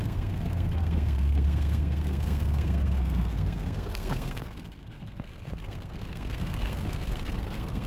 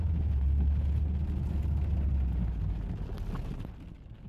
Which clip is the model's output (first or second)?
first